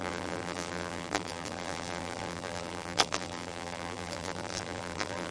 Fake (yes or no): yes